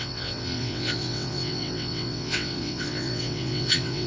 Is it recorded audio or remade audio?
remade